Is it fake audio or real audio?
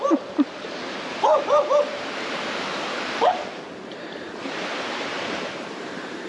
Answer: fake